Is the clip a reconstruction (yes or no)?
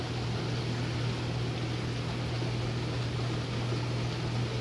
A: no